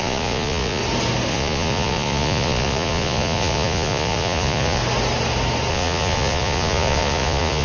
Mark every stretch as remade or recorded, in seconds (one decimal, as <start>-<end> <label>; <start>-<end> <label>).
0.0-0.8 remade; 0.8-1.3 recorded; 1.3-4.8 remade; 4.8-5.7 recorded; 5.7-7.6 remade